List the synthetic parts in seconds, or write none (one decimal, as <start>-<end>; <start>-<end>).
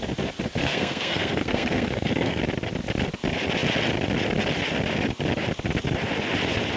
0.6-2.4